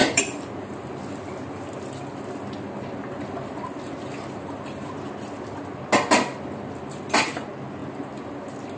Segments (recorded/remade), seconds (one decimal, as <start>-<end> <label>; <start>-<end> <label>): 0.0-0.5 remade; 0.5-8.8 recorded